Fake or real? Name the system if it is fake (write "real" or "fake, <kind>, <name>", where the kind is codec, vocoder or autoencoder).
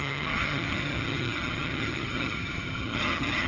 fake, vocoder, HiFi-GAN